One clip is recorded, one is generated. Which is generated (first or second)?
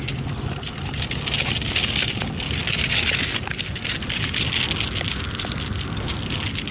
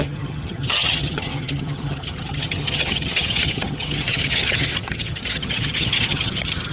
second